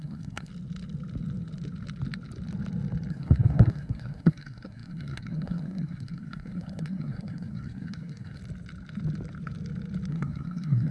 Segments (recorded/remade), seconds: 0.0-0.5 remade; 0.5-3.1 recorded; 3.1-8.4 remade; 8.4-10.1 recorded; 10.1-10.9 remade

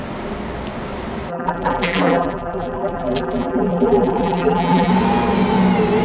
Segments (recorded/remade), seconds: 0.0-1.3 recorded; 1.3-4.9 remade; 4.9-6.0 recorded

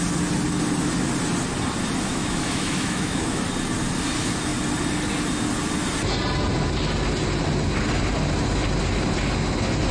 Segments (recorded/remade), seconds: 0.0-2.1 recorded; 2.1-3.4 remade; 3.4-9.9 recorded

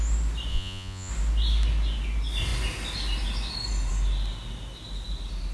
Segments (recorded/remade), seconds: 0.0-0.5 recorded; 0.5-1.1 remade; 1.1-5.5 recorded

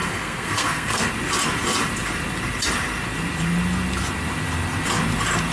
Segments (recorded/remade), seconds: 0.0-1.1 remade; 1.1-5.5 recorded